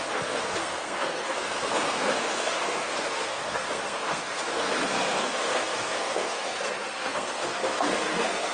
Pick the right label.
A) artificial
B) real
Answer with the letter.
A